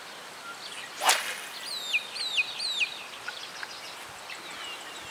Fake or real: real